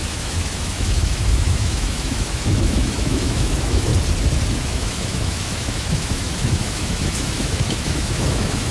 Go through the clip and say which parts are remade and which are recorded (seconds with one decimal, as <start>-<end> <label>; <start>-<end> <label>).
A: 0.0-3.9 remade; 3.9-4.5 recorded; 4.5-8.7 remade